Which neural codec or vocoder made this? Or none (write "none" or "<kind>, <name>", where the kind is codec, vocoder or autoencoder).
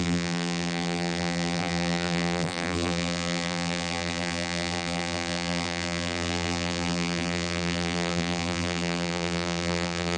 vocoder, BigVGAN v2